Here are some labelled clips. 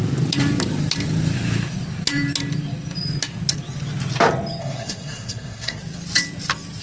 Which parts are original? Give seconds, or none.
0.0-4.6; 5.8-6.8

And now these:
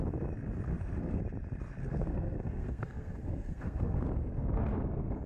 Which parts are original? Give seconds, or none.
0.0-0.7; 1.2-1.8

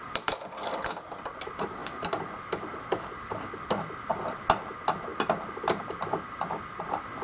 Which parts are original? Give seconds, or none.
0.0-7.2

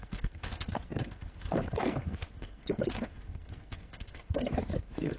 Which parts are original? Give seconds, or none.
none

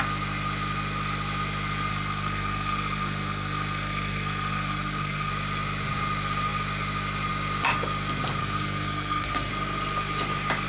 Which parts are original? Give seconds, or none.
0.0-1.9; 5.3-8.4; 9.5-10.7

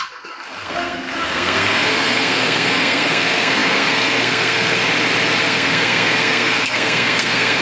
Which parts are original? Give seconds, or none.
4.8-5.4

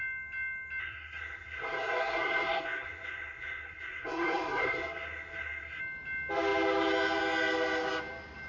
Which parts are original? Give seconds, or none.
0.0-0.8; 5.8-8.5

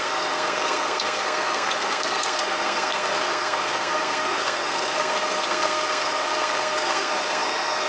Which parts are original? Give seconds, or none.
none